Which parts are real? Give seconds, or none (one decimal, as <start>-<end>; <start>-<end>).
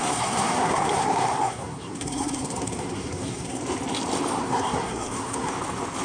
3.6-4.4; 5.5-6.0